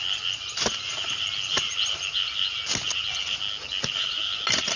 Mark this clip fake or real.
real